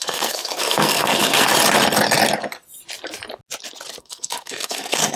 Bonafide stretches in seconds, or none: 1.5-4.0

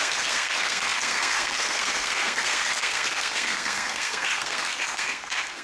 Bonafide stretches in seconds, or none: none

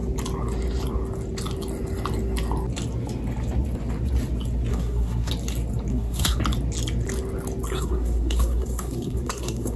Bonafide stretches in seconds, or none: 0.0-4.7; 5.3-5.9; 6.4-7.7

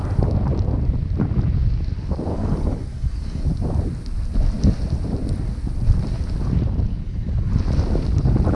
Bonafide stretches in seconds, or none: 0.0-2.3; 3.4-6.9; 7.5-8.5

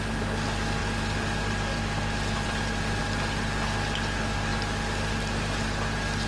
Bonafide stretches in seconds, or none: 0.0-0.8; 3.0-6.3

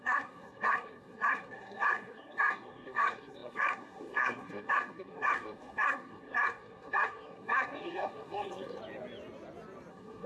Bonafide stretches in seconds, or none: 8.8-9.9